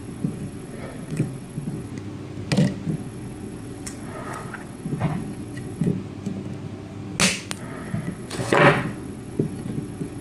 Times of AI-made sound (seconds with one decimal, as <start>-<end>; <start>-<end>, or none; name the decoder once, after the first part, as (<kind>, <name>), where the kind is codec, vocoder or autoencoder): 0.0-1.9 (vocoder, WaveNeXt); 2.9-5.9; 7.6-10.2